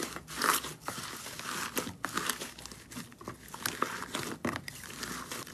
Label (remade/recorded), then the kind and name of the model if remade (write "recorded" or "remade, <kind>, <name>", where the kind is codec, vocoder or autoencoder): recorded